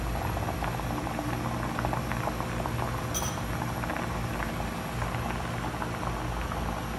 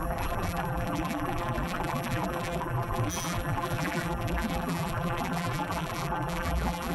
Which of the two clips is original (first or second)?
first